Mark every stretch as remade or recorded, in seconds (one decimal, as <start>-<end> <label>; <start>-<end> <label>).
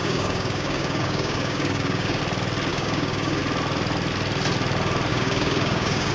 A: 0.0-2.2 remade; 2.2-2.7 recorded; 2.7-3.4 remade; 3.4-5.1 recorded; 5.1-6.1 remade